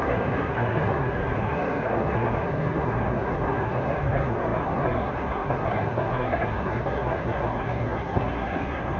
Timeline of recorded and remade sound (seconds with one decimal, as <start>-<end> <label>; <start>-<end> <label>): 0.0-9.0 remade